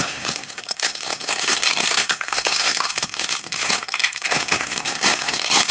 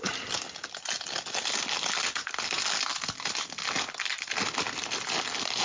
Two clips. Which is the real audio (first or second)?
second